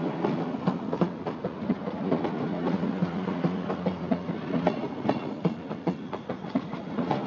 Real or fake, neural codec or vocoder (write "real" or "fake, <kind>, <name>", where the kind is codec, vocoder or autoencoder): fake, vocoder, Vocos